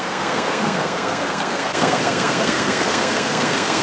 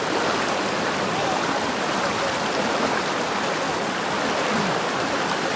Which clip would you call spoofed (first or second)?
first